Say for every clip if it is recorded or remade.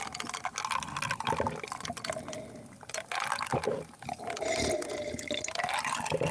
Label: recorded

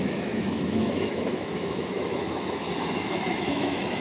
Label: remade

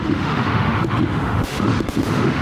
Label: remade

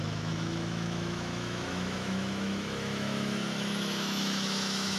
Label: remade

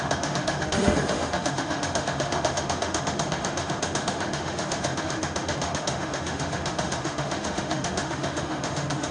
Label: remade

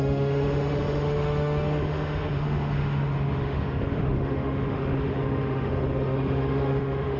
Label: remade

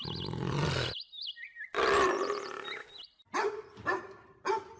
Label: recorded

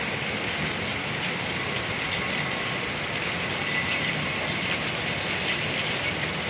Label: recorded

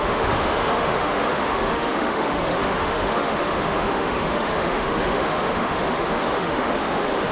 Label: remade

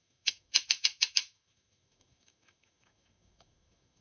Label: remade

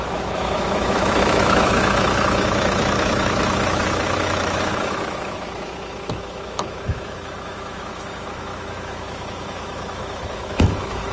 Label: remade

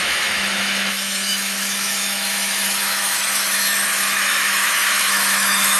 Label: remade